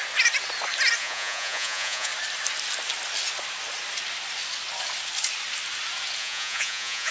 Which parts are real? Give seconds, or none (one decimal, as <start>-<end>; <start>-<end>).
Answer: 0.0-1.0; 2.1-6.2